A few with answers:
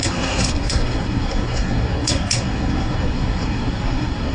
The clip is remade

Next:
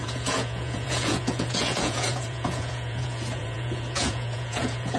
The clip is remade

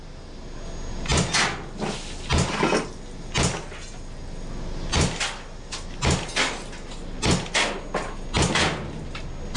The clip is recorded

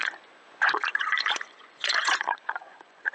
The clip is remade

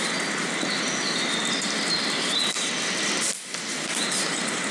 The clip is recorded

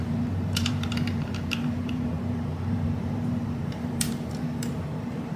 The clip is remade